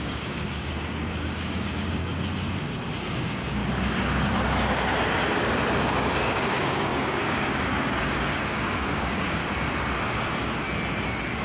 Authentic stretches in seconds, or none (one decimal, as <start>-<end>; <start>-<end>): 2.0-3.0; 3.6-6.1; 9.4-11.4